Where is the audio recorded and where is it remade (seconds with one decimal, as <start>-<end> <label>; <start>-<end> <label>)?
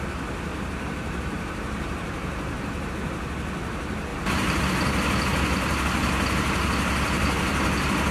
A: 0.0-0.5 recorded; 0.5-2.9 remade; 2.9-4.1 recorded; 4.1-4.6 remade; 4.6-8.1 recorded